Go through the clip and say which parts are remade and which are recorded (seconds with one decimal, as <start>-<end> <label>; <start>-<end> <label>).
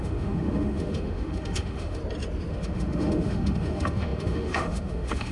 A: 0.0-2.0 remade; 2.0-2.5 recorded; 2.5-5.3 remade